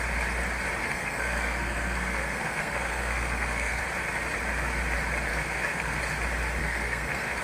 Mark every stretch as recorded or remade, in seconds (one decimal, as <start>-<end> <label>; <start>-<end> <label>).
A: 0.0-0.8 recorded; 0.8-3.8 remade; 3.8-5.3 recorded; 5.3-6.0 remade; 6.0-6.6 recorded; 6.6-7.4 remade

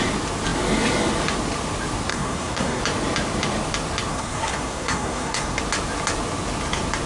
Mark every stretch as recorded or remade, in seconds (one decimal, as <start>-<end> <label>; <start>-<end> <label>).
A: 0.0-2.1 recorded; 2.1-2.8 remade; 2.8-4.1 recorded; 4.1-5.6 remade; 5.6-7.1 recorded

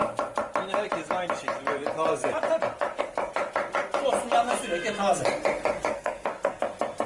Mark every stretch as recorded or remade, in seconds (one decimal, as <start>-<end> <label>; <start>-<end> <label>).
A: 0.0-5.9 recorded; 5.9-6.6 remade; 6.6-7.1 recorded